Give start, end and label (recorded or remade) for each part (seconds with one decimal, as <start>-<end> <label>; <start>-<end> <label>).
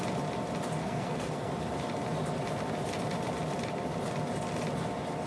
0.0-0.8 recorded; 0.8-1.5 remade; 1.5-5.3 recorded